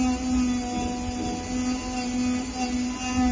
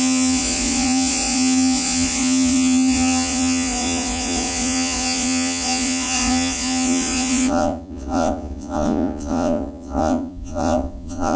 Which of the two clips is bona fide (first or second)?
first